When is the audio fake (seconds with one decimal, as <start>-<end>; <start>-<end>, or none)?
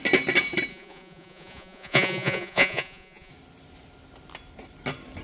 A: 0.7-3.3